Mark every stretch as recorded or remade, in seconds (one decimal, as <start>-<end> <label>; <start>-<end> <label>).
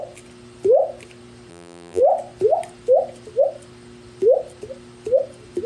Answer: 0.0-1.5 recorded; 1.5-2.0 remade; 2.0-5.7 recorded